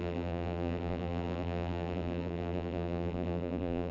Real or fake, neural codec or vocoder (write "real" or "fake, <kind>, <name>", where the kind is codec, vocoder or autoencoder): fake, vocoder, BigVGAN v2